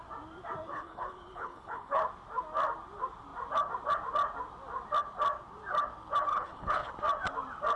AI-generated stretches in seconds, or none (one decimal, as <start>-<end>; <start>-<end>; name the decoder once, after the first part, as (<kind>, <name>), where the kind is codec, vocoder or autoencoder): 0.7-2.0 (codec, HILCodec); 6.3-6.9